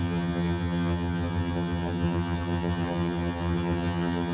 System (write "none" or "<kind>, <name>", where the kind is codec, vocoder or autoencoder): vocoder, HiFi-GAN